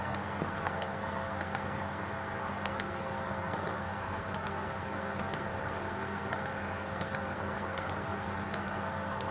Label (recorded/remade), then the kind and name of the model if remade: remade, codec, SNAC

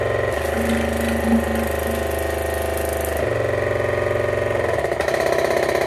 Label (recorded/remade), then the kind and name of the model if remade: recorded